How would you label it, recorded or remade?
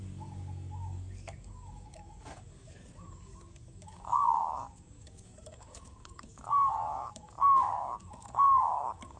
remade